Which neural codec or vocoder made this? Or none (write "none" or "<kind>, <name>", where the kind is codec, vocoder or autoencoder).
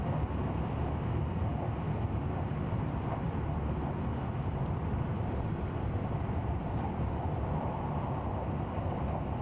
vocoder, BigVGAN v2